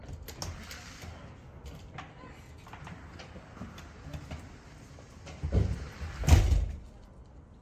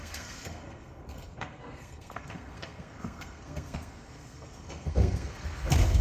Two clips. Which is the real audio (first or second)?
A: first